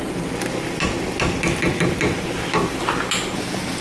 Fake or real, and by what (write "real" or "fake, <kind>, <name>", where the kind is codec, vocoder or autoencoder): real